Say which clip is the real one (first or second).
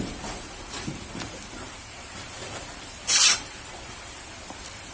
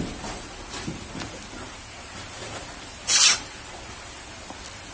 second